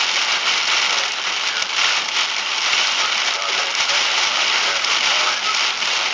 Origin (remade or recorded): recorded